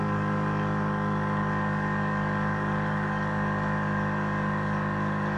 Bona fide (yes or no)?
no